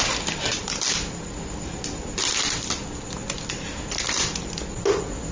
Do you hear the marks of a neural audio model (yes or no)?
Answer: no